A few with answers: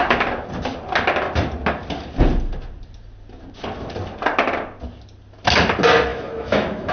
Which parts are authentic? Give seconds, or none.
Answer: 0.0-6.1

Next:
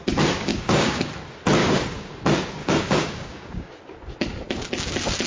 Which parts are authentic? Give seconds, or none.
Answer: 0.0-0.5; 1.1-1.6; 2.1-2.6; 3.7-5.3